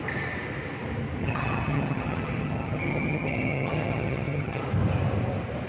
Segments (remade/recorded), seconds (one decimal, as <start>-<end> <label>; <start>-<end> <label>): 0.0-1.2 recorded; 1.2-4.6 remade; 4.6-5.7 recorded